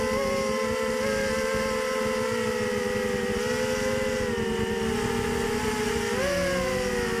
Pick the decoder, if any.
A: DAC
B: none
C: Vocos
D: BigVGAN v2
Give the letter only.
B